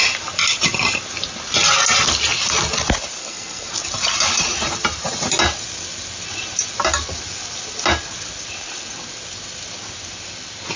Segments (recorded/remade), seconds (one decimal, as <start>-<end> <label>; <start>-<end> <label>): 0.0-3.2 recorded; 3.2-3.7 remade; 3.7-10.8 recorded